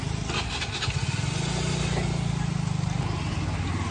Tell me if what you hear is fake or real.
real